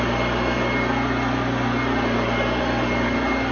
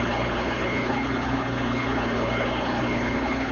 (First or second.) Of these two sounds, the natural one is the first